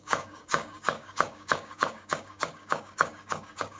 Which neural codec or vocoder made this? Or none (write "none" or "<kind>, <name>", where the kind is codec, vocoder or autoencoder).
codec, DAC